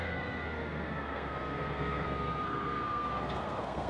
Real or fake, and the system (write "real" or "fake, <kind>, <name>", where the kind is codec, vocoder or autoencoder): fake, codec, SNAC